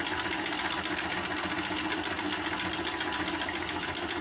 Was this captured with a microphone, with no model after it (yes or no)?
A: yes